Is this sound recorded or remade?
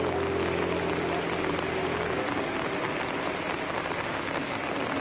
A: recorded